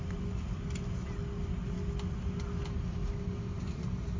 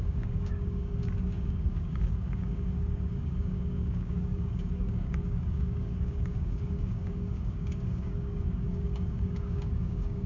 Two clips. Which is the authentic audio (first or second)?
first